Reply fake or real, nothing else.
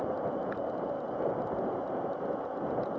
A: real